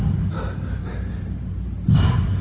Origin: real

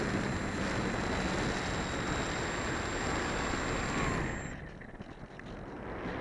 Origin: real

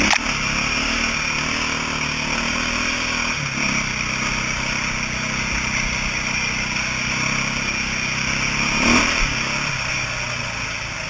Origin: real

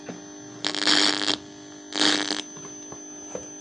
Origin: real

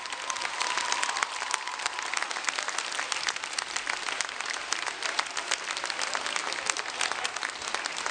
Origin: real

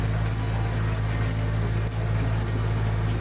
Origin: real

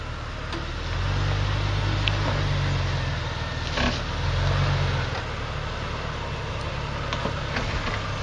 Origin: real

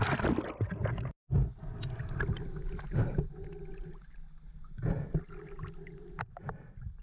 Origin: real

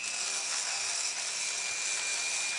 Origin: real